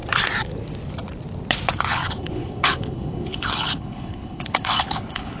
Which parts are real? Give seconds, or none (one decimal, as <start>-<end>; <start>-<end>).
0.0-1.9